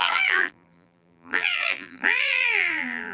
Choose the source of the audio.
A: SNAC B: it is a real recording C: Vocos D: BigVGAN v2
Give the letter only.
D